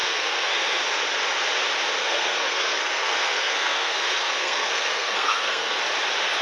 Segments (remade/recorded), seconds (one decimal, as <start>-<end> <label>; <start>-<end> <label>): 0.0-0.8 remade; 0.8-2.0 recorded; 2.0-5.8 remade; 5.8-6.4 recorded